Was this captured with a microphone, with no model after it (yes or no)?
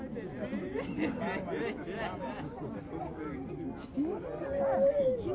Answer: yes